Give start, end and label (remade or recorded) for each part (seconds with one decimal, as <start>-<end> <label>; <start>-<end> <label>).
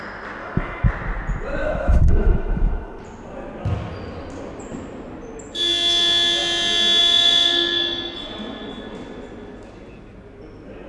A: 0.0-0.4 recorded; 0.4-0.9 remade; 0.9-1.6 recorded; 1.6-3.0 remade; 3.0-10.9 recorded